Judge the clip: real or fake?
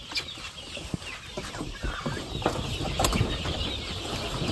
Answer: real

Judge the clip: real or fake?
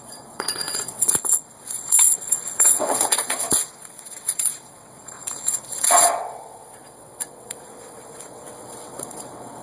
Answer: fake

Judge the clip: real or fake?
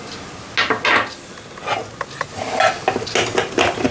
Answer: real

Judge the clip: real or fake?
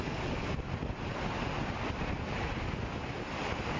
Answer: real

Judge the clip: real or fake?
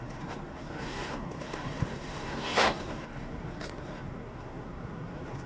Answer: fake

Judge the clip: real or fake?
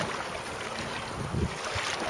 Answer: real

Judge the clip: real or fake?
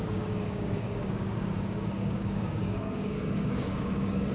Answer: fake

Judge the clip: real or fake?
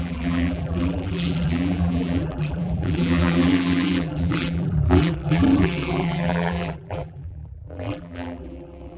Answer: fake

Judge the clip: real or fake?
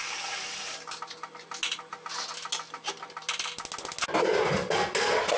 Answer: real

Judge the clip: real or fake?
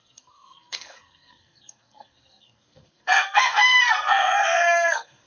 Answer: fake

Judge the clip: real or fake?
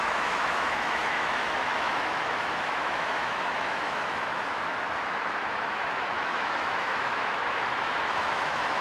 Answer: fake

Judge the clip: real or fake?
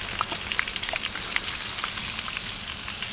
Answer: real